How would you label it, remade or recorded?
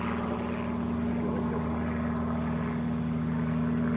recorded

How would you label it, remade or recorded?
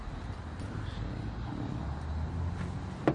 recorded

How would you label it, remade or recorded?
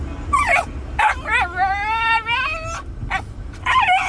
recorded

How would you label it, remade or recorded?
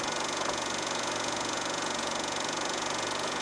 remade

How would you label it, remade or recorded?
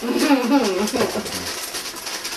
recorded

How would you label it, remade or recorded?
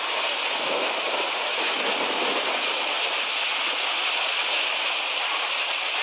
recorded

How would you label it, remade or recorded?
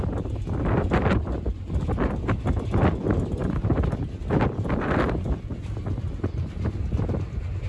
recorded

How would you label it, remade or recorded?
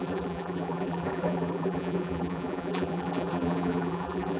remade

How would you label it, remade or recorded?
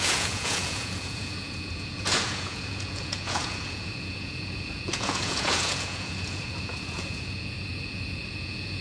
remade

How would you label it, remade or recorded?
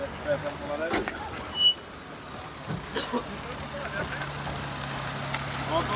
recorded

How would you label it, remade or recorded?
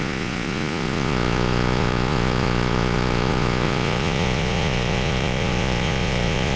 remade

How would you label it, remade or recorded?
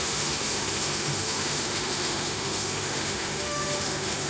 remade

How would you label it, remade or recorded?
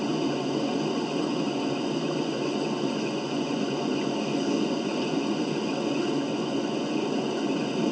remade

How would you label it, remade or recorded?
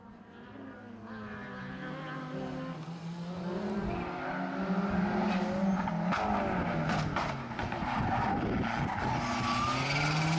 recorded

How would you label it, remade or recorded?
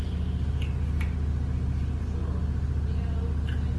recorded